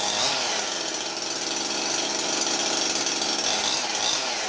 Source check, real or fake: real